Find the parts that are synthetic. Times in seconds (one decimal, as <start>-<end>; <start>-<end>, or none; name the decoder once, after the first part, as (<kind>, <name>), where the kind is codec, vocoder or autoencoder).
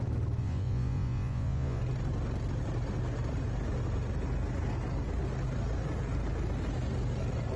0.4-1.8 (vocoder, Vocos)